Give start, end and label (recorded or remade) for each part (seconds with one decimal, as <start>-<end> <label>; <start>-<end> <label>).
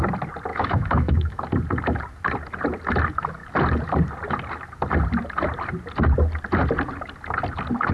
0.0-0.5 recorded; 0.5-1.4 remade; 1.4-7.9 recorded